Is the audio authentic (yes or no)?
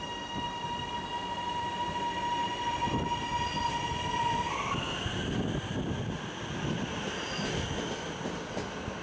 yes